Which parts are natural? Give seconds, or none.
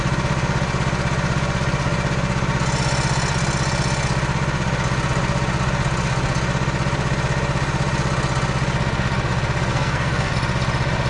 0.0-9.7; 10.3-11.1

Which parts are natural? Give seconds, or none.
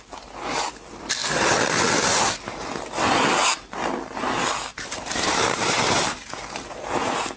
0.0-4.7; 6.9-7.4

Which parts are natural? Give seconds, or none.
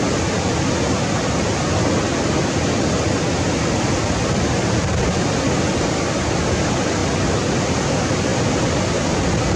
0.0-9.6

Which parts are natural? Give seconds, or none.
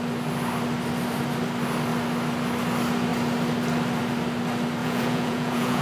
0.0-4.8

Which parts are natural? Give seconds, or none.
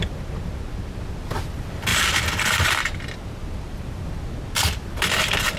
0.0-5.6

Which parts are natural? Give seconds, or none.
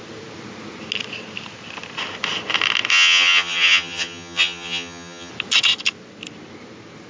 0.0-2.9; 5.3-7.1